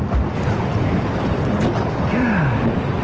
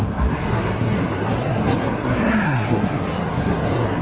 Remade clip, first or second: second